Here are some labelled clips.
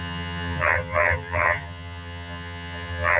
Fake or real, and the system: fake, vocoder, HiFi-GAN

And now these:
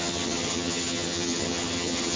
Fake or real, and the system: fake, vocoder, HiFi-GAN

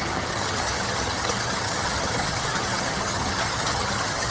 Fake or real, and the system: fake, vocoder, HiFi-GAN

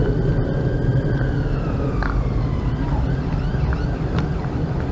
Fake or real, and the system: real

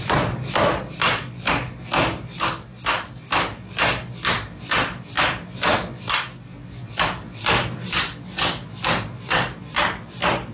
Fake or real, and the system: real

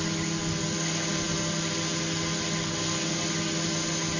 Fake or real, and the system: real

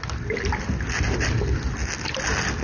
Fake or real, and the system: real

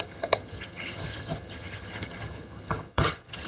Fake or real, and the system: fake, vocoder, HiFi-GAN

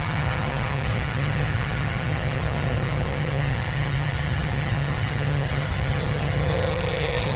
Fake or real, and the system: fake, vocoder, HiFi-GAN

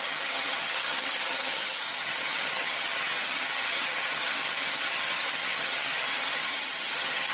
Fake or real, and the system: fake, vocoder, HiFi-GAN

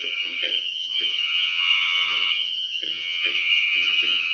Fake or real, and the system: fake, vocoder, HiFi-GAN